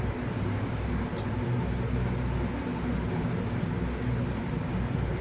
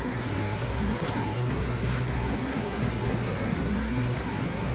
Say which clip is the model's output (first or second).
second